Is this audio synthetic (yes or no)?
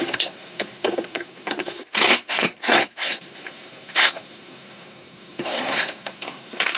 yes